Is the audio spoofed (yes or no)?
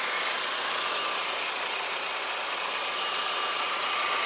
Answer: no